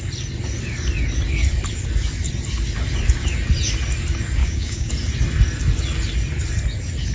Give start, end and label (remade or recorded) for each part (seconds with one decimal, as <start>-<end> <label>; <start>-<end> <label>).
0.0-4.4 recorded; 4.4-4.9 remade; 4.9-7.1 recorded